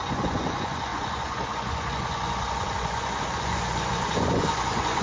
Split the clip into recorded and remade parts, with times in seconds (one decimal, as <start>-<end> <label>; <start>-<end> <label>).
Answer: 0.0-5.0 remade